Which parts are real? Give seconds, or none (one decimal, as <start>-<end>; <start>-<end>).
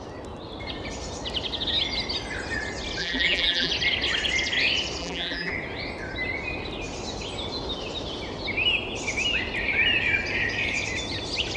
0.0-3.0; 3.7-5.0; 5.5-11.6